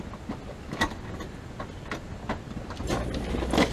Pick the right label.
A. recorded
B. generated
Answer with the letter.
A